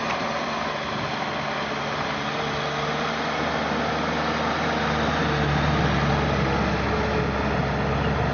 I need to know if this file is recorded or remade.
recorded